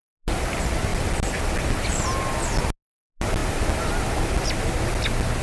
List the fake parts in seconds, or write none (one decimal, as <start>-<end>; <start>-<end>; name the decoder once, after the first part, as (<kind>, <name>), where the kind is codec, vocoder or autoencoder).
0.9-1.9 (vocoder, BigVGAN v2)